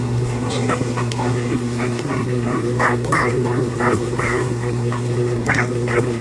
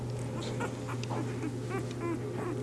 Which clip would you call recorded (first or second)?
second